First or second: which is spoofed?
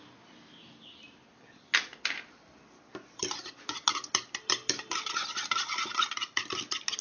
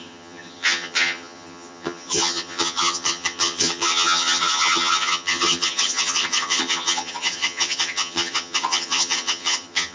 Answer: second